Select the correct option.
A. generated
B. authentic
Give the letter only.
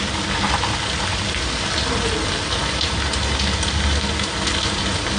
B